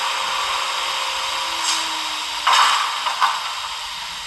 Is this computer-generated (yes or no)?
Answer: no